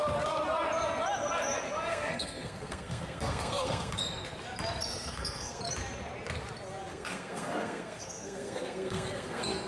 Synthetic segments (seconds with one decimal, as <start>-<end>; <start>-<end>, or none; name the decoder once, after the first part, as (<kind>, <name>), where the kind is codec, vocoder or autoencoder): 1.9-4.0 (codec, SNAC); 4.9-5.6; 6.9-9.7